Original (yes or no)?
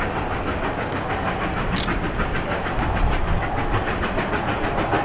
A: yes